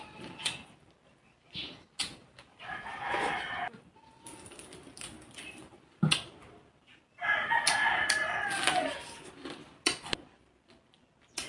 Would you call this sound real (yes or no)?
yes